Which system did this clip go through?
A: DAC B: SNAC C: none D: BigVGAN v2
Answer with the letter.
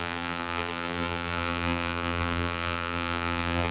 D